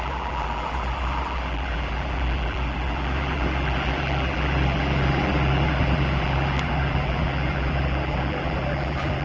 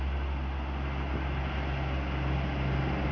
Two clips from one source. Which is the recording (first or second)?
second